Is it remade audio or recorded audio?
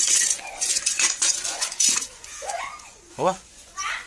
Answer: remade